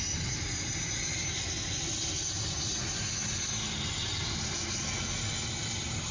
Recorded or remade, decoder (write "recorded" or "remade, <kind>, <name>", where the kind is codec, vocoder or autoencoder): recorded